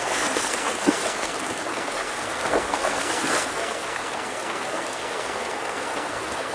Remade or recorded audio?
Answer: remade